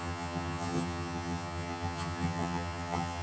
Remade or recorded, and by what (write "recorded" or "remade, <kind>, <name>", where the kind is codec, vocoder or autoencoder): remade, vocoder, HiFi-GAN